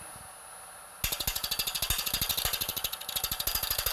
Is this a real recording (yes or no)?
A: yes